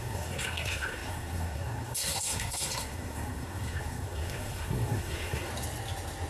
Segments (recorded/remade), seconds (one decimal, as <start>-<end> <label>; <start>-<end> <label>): 0.0-5.5 remade; 5.5-6.3 recorded